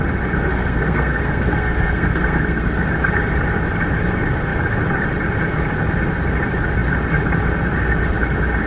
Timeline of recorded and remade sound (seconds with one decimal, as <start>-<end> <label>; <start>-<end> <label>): 0.0-0.5 recorded; 0.5-2.8 remade; 2.8-8.7 recorded

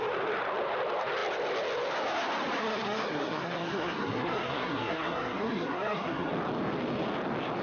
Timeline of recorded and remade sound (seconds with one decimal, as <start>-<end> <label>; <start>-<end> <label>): 0.0-2.6 recorded; 2.6-6.3 remade; 6.3-7.6 recorded